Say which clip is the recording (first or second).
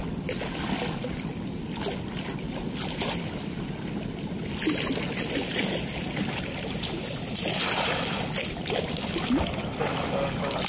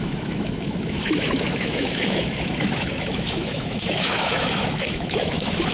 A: first